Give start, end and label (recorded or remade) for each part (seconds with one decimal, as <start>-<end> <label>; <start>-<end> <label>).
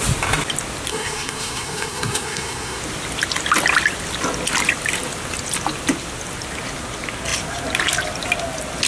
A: 0.0-0.9 recorded; 0.9-2.8 remade; 2.8-8.9 recorded